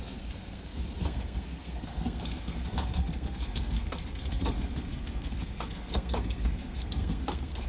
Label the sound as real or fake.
fake